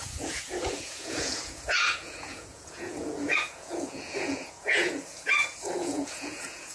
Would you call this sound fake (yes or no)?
yes